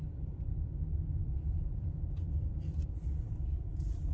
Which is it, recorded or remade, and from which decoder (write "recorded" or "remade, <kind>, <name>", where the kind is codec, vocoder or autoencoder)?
remade, vocoder, BigVGAN v2